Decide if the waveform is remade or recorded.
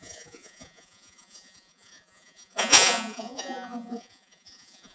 remade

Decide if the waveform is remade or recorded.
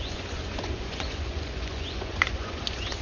remade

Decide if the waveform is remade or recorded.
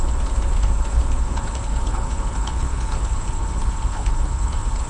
remade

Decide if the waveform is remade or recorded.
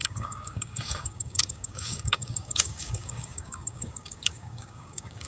remade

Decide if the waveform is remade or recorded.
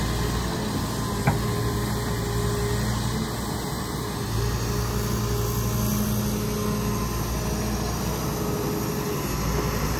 recorded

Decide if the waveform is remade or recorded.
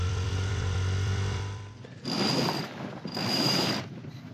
remade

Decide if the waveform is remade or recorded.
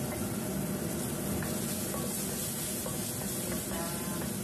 recorded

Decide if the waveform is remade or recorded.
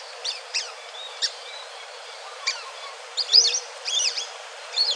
remade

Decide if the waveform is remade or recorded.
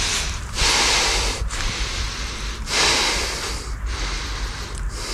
recorded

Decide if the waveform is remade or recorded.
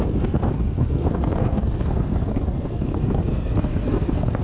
remade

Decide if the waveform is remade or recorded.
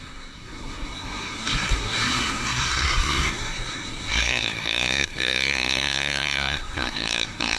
remade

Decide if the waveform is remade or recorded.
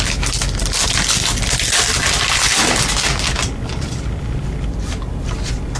recorded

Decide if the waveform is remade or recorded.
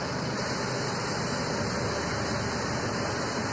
recorded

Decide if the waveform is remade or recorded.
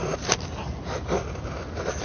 recorded